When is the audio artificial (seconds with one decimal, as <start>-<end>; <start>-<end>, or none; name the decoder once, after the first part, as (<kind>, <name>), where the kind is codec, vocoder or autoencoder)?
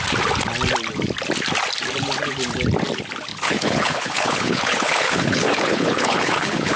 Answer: 3.3-6.8 (codec, HILCodec)